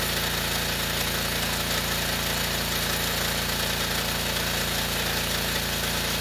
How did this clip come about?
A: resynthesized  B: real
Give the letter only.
B